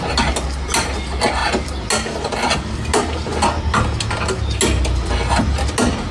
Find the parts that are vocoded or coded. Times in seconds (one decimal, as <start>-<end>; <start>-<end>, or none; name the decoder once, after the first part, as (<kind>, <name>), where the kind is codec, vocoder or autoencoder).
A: none

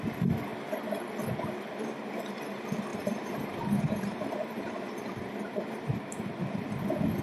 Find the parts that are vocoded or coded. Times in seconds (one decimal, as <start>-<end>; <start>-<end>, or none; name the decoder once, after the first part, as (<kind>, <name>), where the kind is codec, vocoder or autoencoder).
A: 2.9-6.7 (vocoder, BigVGAN v2)

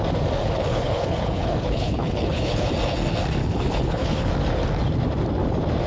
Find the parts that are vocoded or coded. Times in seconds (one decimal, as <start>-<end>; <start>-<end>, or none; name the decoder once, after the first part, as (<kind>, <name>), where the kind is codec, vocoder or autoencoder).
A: 0.4-2.7 (codec, HILCodec); 3.4-4.3

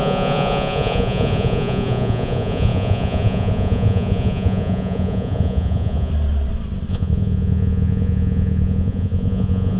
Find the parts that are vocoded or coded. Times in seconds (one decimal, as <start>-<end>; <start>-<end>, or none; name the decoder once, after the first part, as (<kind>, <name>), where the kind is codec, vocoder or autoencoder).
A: 0.0-6.1 (vocoder, Vocos); 6.9-9.8

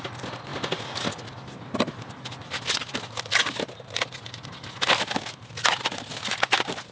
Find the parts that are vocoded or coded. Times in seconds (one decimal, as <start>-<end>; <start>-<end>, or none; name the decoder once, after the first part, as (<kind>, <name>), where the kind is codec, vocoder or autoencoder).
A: none